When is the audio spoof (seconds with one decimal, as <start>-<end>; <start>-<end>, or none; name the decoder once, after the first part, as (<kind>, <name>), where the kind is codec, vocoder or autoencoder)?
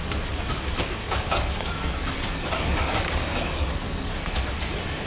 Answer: 1.0-4.1 (codec, DAC)